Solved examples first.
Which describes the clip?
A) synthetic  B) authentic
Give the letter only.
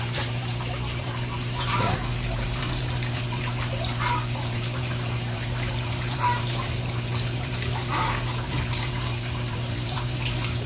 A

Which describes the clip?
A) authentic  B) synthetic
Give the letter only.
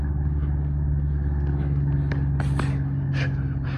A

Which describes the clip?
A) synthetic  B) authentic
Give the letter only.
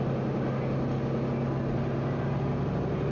B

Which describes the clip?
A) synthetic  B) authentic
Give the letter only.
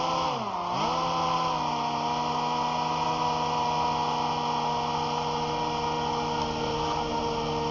B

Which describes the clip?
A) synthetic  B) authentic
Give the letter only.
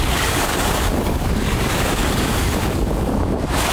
A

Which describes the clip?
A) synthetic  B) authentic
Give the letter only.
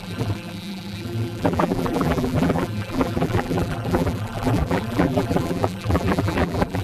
A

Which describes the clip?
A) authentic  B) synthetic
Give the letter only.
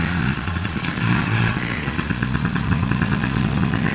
B